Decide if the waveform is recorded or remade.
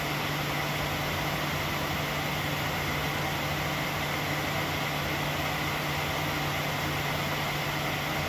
recorded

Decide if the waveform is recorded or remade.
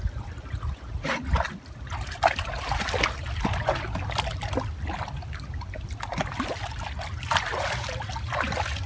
recorded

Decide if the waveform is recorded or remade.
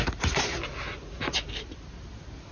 recorded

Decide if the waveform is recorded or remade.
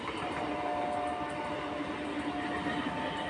recorded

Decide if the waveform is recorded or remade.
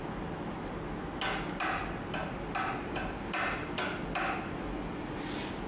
recorded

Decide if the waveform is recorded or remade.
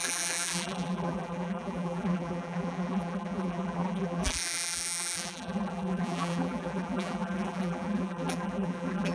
remade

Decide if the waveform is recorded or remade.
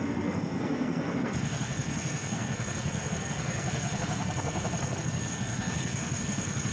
remade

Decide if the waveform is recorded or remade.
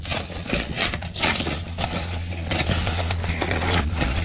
remade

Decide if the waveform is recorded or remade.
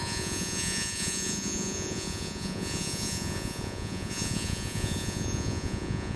remade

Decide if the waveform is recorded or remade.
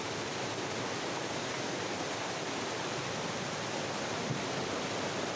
recorded